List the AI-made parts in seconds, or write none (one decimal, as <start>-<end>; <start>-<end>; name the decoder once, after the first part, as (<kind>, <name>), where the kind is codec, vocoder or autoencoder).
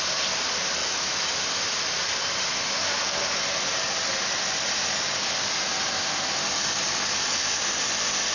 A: 0.8-1.3 (autoencoder, DAC-VAE)